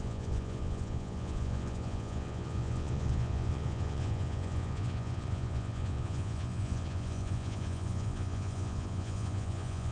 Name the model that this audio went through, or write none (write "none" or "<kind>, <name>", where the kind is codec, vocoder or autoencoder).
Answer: vocoder, Vocos